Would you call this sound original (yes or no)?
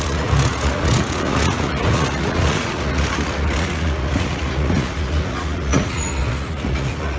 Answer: no